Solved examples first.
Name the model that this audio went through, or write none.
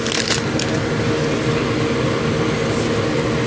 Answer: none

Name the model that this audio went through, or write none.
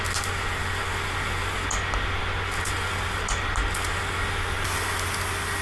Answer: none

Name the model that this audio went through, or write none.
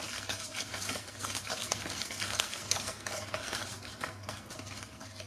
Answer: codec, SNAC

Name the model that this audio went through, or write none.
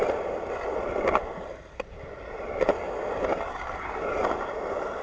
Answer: none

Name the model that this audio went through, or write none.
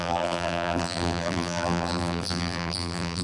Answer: vocoder, BigVGAN v2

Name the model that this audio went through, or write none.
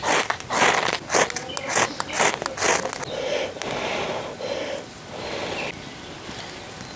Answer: none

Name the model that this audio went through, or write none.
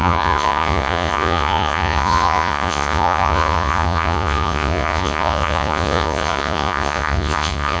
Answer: vocoder, Vocos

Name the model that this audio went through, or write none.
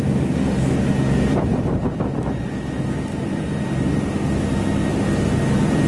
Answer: none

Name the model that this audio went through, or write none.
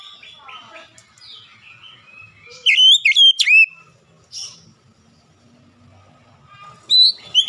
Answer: none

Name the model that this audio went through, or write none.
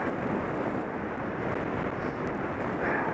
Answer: none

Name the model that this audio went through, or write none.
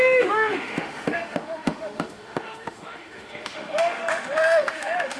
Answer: autoencoder, DAC-VAE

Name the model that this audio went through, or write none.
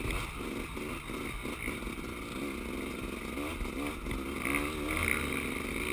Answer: none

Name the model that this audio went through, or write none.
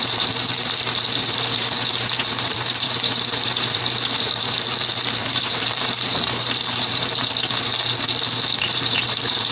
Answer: vocoder, BigVGAN v2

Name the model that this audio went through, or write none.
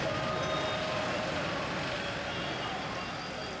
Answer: none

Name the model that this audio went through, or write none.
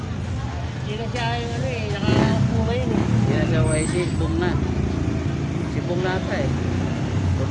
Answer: none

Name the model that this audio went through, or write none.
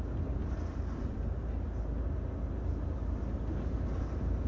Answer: none